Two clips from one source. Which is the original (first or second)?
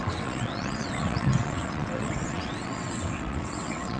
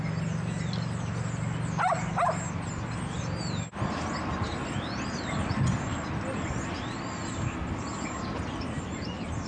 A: second